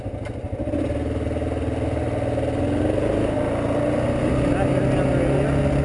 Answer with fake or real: real